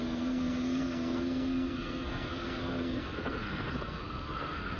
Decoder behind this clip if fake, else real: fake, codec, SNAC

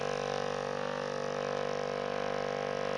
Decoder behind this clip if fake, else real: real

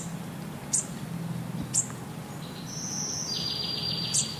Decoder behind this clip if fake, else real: real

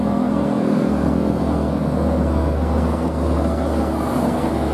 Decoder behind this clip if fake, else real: fake, codec, SNAC